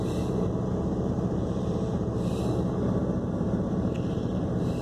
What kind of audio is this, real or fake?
fake